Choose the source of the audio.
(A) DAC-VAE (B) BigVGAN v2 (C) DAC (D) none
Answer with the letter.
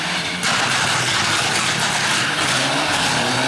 D